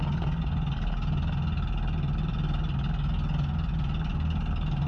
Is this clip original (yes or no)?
yes